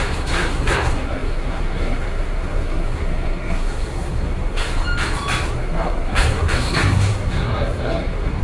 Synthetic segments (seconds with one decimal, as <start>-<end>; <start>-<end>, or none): 0.0-4.7; 5.5-8.4